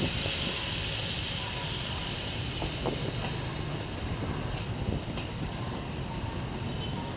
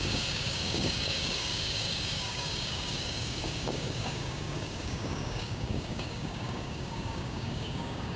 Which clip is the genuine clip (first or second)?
first